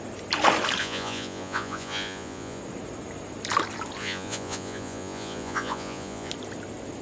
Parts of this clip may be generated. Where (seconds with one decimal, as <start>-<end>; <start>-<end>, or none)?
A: 0.8-2.6; 4.0-6.3